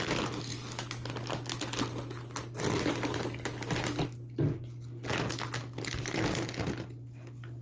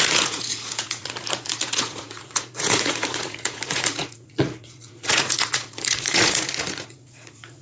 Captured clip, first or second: first